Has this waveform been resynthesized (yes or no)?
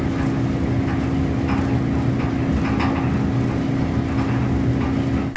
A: no